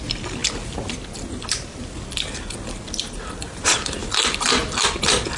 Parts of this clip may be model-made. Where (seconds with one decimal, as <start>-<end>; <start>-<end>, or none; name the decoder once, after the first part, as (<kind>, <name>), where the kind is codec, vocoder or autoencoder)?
none